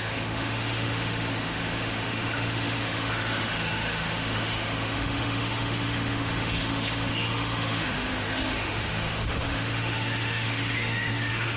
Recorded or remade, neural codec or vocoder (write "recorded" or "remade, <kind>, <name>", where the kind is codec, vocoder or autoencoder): remade, autoencoder, DAC-VAE